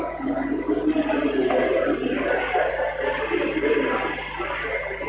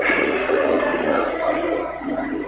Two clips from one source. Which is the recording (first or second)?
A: first